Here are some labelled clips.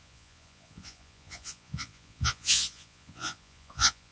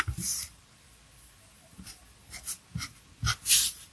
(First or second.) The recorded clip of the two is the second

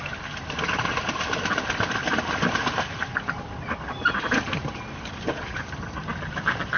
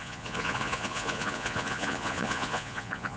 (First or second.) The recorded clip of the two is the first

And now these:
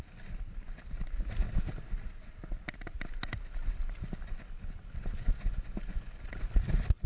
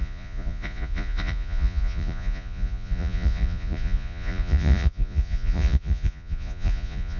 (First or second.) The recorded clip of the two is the first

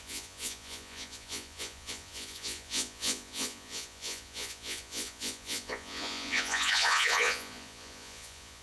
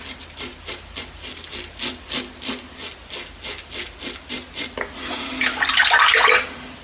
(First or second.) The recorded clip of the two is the second